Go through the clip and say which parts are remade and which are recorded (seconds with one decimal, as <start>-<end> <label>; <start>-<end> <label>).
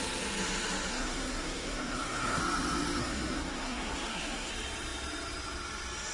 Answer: 0.0-0.9 recorded; 0.9-2.4 remade; 2.4-3.0 recorded; 3.0-4.5 remade; 4.5-6.1 recorded